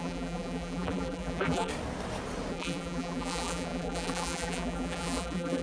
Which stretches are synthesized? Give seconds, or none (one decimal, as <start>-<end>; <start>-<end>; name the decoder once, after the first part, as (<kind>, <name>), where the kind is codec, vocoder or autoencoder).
0.0-1.7 (vocoder, BigVGAN v2); 2.5-5.6